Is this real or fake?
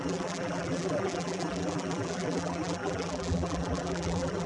fake